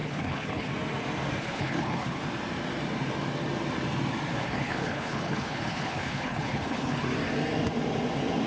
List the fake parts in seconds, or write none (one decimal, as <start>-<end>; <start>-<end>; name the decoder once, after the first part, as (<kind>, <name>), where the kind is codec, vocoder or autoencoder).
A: 0.0-0.7 (codec, HILCodec); 1.4-2.2; 4.4-7.0